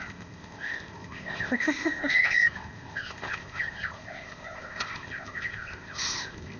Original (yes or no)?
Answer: no